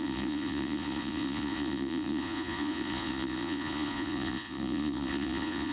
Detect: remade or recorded remade